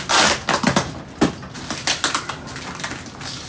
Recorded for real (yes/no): yes